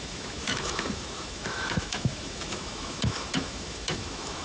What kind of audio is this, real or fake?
fake